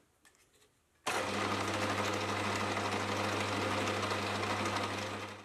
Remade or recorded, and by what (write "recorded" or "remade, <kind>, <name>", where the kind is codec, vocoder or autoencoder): recorded